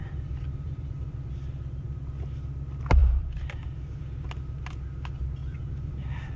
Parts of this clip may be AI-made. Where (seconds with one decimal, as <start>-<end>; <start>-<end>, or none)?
0.0-1.3; 3.0-4.0; 5.4-5.9

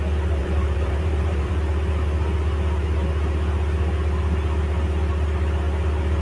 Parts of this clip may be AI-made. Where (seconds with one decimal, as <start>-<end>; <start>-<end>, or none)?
0.4-1.5

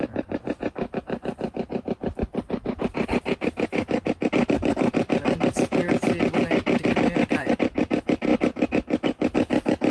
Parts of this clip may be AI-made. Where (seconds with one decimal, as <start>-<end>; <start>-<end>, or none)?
0.0-5.8; 7.4-8.3

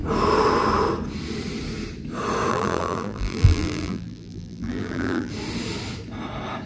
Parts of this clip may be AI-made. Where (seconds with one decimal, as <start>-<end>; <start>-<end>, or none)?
2.5-5.3

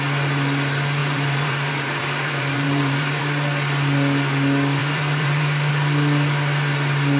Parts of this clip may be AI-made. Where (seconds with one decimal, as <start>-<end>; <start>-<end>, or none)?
1.0-3.2; 4.8-5.7

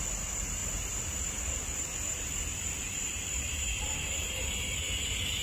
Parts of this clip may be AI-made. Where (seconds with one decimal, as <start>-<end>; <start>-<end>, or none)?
0.0-5.4